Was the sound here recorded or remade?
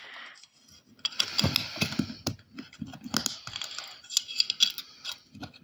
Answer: recorded